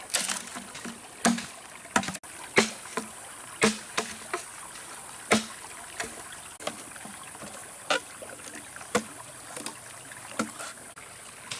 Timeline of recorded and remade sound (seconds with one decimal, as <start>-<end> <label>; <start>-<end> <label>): 0.0-11.6 recorded